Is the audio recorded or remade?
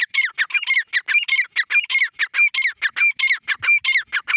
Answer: recorded